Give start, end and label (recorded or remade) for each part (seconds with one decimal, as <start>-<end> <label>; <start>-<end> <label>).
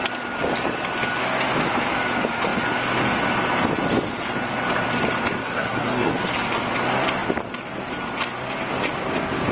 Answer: 0.0-5.4 recorded; 5.4-6.1 remade; 6.1-9.5 recorded